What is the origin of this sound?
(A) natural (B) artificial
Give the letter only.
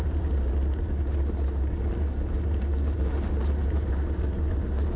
A